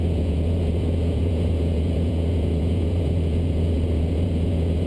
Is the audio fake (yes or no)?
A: yes